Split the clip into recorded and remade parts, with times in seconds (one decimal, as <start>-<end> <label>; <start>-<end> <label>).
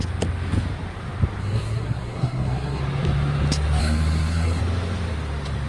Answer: 0.0-1.4 recorded; 1.4-2.8 remade; 2.8-3.8 recorded; 3.8-4.6 remade; 4.6-5.7 recorded